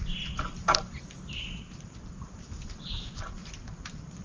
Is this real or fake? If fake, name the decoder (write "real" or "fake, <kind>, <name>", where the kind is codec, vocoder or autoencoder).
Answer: real